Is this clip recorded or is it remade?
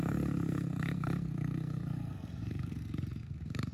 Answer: remade